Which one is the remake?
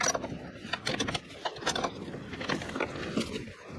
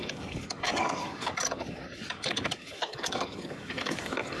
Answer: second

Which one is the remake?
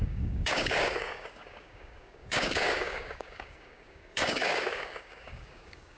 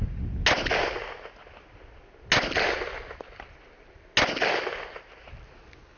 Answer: first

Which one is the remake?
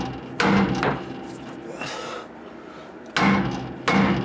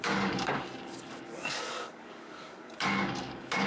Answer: second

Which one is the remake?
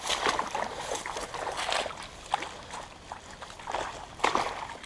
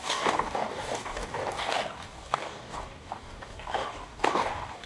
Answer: second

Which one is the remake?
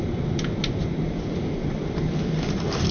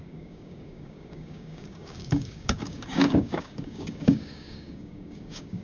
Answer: second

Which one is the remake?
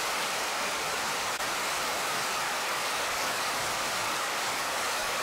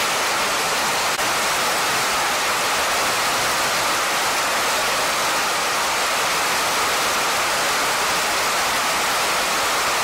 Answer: first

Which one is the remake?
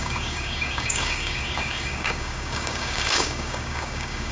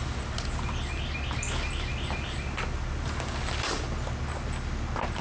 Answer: first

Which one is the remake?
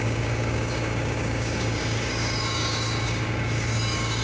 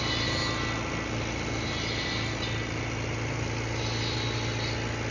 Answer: first